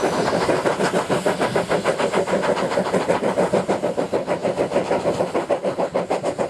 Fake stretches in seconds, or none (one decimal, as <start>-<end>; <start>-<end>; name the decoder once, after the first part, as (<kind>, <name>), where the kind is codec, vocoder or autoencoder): none

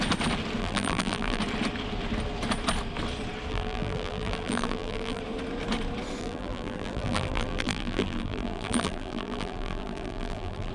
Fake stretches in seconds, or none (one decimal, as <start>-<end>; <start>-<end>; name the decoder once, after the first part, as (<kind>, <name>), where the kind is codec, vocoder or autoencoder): 0.6-1.4 (vocoder, BigVGAN v2); 3.5-5.2; 6.2-10.7

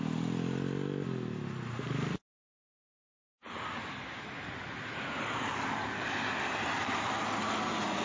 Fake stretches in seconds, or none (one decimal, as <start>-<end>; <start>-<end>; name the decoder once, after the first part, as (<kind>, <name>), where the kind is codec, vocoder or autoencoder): 3.4-4.0 (vocoder, BigVGAN v2)